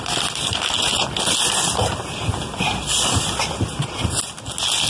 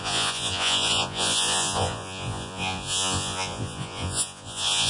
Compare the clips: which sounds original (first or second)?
first